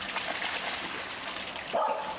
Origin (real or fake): real